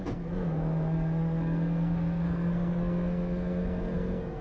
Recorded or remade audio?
remade